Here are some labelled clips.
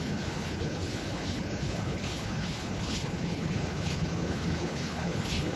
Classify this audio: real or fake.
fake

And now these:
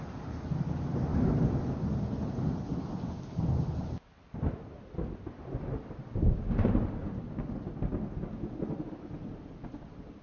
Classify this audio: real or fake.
real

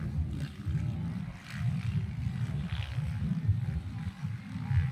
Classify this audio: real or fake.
real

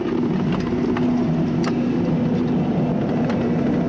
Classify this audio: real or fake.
real